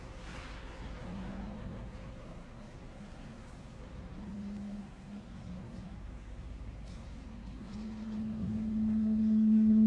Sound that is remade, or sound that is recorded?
remade